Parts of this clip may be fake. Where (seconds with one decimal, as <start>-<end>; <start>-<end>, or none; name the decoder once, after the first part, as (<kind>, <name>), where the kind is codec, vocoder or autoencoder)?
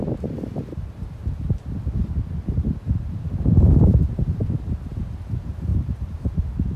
5.7-6.8 (vocoder, BigVGAN v2)